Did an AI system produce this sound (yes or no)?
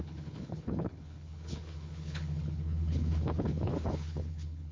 yes